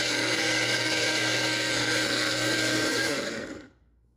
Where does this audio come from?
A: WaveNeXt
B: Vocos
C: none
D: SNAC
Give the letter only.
D